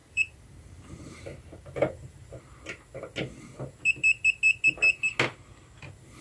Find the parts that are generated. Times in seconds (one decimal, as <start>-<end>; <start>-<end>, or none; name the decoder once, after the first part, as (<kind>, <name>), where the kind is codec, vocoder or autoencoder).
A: 0.0-2.4 (vocoder, BigVGAN v2)